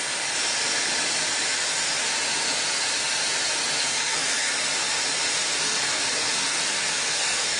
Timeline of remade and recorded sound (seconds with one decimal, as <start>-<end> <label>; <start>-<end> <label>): 0.0-3.8 recorded; 3.8-4.5 remade; 4.5-5.6 recorded; 5.6-7.6 remade